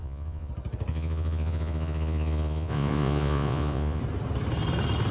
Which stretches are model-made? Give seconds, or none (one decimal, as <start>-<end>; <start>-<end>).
0.0-0.5; 0.9-4.0